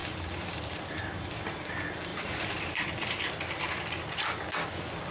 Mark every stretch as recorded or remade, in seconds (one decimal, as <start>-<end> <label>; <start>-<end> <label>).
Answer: 0.0-1.4 remade; 1.4-2.1 recorded; 2.1-3.3 remade; 3.3-5.1 recorded